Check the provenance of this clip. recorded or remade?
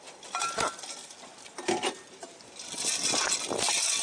recorded